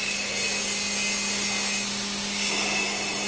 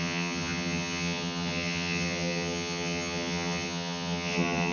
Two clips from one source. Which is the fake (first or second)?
second